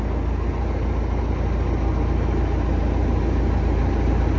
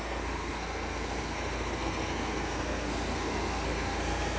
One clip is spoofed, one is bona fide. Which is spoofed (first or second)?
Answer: second